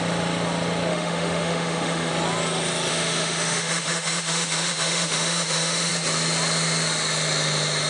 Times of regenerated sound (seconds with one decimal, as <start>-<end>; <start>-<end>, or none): 0.9-2.1; 2.9-5.9